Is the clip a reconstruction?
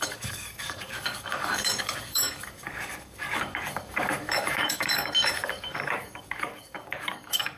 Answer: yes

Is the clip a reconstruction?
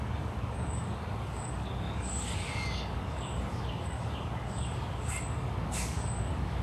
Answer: yes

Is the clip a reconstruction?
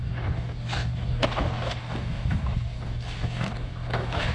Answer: yes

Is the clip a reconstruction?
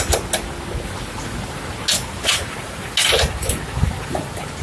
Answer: no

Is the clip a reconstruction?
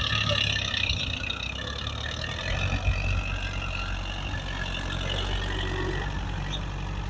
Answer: no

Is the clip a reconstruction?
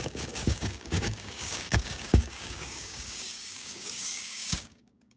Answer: yes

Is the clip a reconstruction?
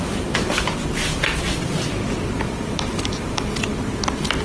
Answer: no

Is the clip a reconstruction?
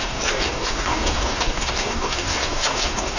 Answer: yes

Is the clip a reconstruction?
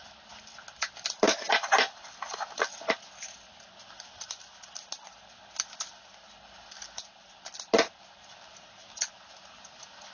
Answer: no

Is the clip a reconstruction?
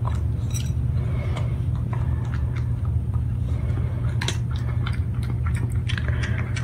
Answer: no